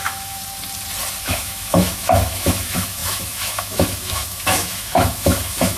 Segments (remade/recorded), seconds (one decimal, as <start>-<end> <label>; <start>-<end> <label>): 0.0-0.4 remade; 0.4-1.2 recorded; 1.2-5.8 remade